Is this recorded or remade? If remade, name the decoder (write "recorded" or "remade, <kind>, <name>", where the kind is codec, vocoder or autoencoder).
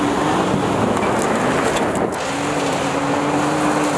recorded